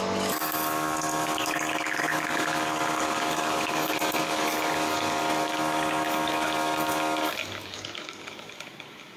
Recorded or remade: remade